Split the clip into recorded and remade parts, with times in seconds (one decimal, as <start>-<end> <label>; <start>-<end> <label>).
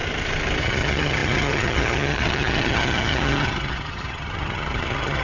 0.0-0.6 recorded; 0.6-5.2 remade